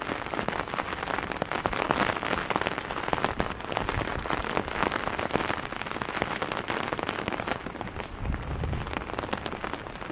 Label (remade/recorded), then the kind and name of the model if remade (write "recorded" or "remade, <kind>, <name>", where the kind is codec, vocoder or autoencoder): recorded